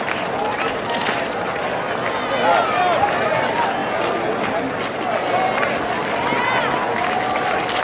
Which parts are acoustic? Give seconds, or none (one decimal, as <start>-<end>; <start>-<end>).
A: 0.0-7.8